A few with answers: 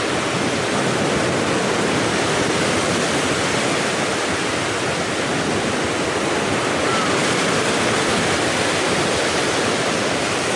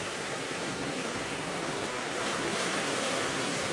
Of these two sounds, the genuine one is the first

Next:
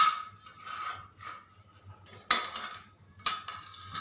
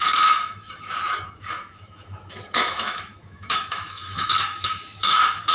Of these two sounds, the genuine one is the first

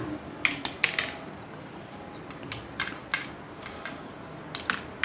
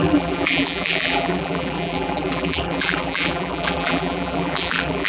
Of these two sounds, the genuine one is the first